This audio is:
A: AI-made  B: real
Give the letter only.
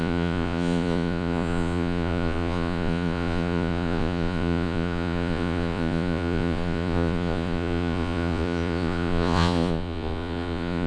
A